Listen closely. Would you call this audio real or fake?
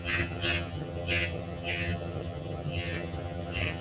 fake